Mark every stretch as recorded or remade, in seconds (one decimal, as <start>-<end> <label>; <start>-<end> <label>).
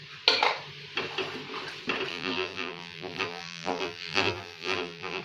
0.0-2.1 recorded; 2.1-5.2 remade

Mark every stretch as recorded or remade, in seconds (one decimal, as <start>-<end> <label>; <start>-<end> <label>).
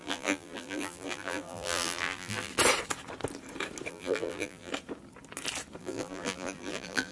0.0-2.5 remade; 2.5-3.9 recorded; 3.9-4.7 remade; 4.7-5.8 recorded; 5.8-7.1 remade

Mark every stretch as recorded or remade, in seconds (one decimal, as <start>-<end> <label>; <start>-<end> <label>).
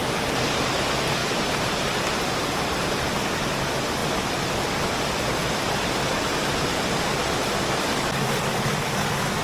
0.0-1.2 recorded; 1.2-2.1 remade; 2.1-9.4 recorded